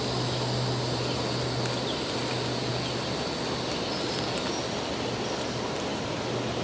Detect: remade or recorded recorded